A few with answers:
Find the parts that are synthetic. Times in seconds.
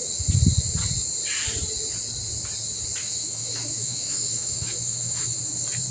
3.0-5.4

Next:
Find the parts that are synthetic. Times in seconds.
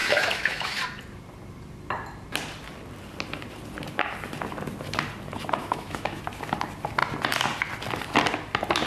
0.0-0.8; 5.6-6.2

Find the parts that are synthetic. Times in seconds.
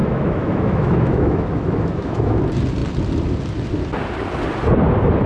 0.0-2.4